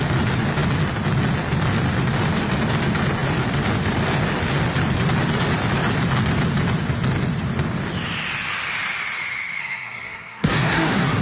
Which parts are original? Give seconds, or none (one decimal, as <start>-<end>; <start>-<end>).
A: 0.0-9.6